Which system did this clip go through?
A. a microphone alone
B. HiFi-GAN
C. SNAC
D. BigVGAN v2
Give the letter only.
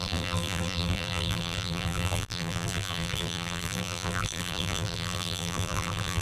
D